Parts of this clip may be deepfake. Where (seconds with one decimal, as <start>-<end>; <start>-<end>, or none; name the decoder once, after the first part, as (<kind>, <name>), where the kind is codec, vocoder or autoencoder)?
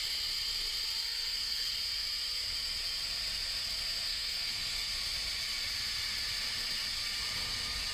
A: 1.0-1.7 (codec, SNAC); 4.1-4.9